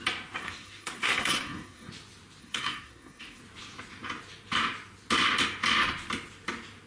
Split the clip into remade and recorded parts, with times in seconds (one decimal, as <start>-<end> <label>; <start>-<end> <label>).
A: 0.0-0.4 recorded; 0.4-1.9 remade; 1.9-2.4 recorded; 2.4-3.4 remade; 3.4-6.9 recorded